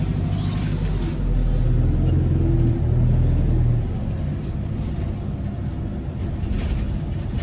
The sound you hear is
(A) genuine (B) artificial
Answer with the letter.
A